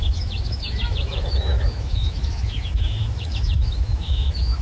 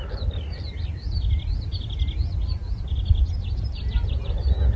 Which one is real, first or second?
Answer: second